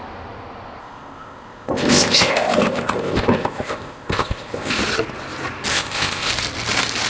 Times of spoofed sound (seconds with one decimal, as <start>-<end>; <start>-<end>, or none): 0.8-4.8; 5.7-6.3